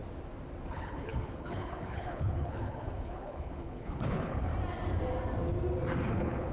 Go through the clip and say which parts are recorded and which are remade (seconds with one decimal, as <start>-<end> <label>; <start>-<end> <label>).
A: 0.0-0.7 recorded; 0.7-4.5 remade; 4.5-6.1 recorded; 6.1-6.5 remade